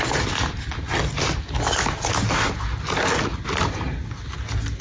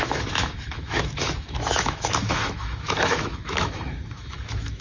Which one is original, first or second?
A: first